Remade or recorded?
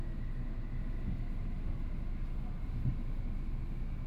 recorded